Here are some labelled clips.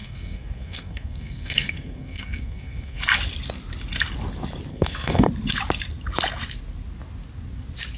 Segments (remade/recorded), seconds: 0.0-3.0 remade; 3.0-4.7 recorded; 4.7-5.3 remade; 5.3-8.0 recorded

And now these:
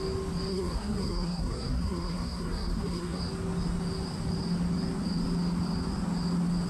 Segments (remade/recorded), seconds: 0.0-0.5 recorded; 0.5-3.2 remade; 3.2-6.7 recorded